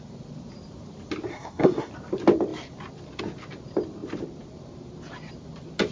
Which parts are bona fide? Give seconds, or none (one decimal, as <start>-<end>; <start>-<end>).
0.0-1.3; 1.9-5.9